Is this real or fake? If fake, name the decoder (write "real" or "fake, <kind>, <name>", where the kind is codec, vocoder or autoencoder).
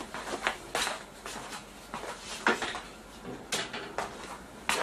real